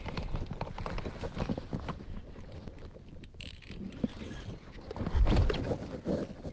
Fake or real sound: real